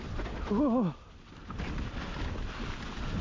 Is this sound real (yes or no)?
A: yes